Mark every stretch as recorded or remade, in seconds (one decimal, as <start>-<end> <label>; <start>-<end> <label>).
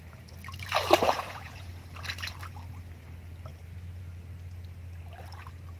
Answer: 0.0-1.0 recorded; 1.0-1.7 remade; 1.7-5.8 recorded